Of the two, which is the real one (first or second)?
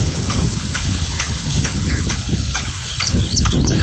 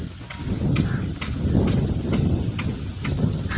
second